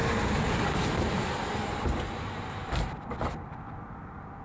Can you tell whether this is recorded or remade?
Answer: recorded